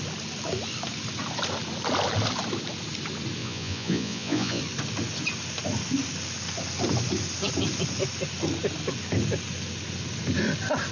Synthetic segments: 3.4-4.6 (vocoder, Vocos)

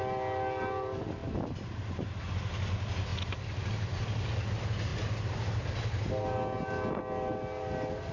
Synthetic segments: none

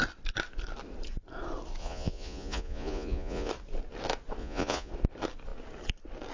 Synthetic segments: 1.8-3.5 (vocoder, Vocos); 4.4-4.9

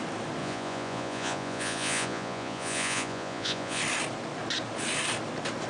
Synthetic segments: 0.4-3.8 (vocoder, Vocos)